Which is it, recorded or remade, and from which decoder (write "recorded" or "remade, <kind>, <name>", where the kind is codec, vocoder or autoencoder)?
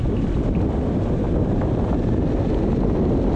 recorded